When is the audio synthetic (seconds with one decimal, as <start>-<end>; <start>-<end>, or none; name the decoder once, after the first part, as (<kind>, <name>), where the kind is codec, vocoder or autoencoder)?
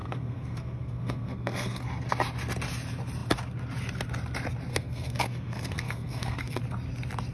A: 0.0-1.8 (codec, SNAC); 4.7-6.6